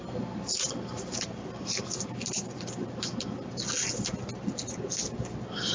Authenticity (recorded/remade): recorded